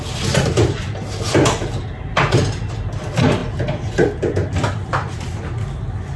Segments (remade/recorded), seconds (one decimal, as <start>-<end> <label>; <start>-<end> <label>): 0.0-6.2 recorded